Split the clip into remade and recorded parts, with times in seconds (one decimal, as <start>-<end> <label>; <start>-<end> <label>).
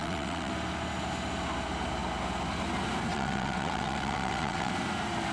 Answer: 0.0-0.5 remade; 0.5-3.1 recorded; 3.1-4.7 remade; 4.7-5.3 recorded